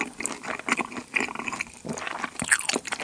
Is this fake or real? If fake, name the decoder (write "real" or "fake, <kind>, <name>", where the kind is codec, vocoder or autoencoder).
real